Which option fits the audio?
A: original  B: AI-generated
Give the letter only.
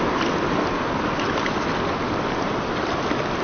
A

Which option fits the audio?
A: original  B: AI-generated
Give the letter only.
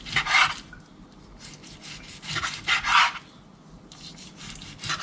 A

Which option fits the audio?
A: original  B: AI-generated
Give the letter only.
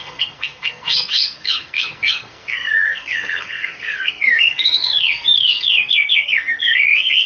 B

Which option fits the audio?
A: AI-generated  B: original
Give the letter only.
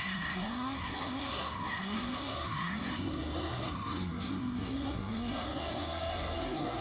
A